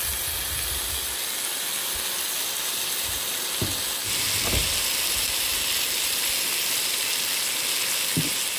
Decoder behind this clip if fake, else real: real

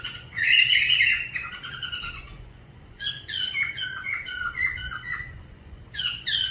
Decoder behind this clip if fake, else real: fake, vocoder, Vocos